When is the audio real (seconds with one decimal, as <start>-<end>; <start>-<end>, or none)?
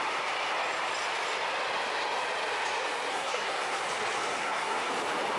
0.0-3.1; 3.8-4.3; 4.9-5.4